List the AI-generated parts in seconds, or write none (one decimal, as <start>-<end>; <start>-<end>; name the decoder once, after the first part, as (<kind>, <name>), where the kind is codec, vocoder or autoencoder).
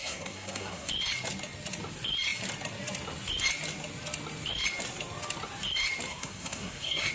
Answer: 0.0-0.9 (codec, SNAC); 6.1-7.1